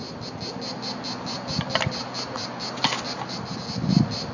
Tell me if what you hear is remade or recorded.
recorded